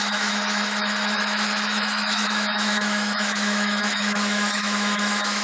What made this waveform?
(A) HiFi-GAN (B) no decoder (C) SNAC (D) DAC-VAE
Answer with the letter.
D